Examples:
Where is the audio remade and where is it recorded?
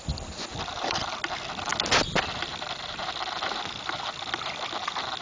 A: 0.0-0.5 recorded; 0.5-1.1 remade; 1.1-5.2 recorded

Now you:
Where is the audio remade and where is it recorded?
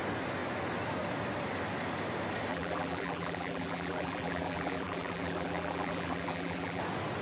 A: 0.0-2.5 recorded; 2.5-6.8 remade; 6.8-7.2 recorded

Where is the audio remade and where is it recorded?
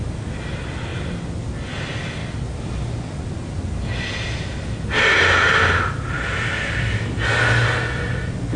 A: 0.0-8.6 recorded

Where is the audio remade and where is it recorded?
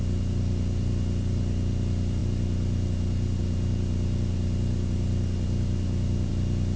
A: 0.0-6.8 recorded